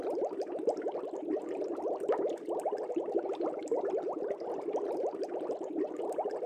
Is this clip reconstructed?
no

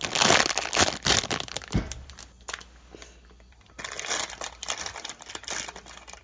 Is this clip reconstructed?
no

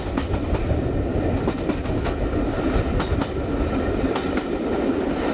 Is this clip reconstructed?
no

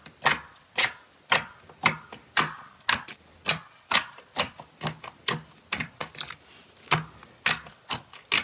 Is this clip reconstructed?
no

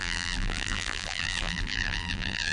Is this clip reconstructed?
yes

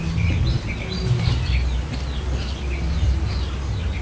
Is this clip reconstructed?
no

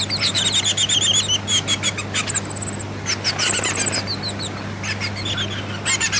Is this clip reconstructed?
no